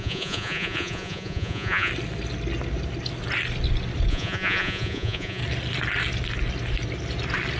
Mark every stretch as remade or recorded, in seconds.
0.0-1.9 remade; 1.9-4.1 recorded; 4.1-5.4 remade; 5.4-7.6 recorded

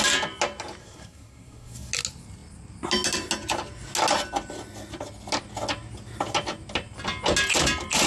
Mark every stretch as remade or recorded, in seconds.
0.0-0.8 recorded; 0.8-1.9 remade; 1.9-8.1 recorded

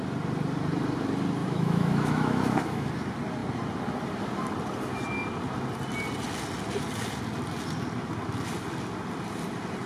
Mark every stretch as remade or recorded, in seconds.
0.0-1.4 recorded; 1.4-2.9 remade; 2.9-9.9 recorded